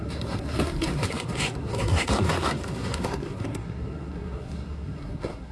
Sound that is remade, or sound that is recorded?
remade